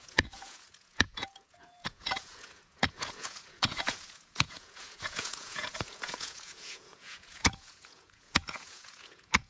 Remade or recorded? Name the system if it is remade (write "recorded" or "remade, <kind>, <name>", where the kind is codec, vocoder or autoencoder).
remade, vocoder, Vocos